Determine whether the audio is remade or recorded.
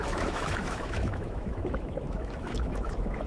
remade